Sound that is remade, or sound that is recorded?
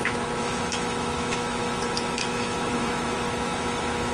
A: remade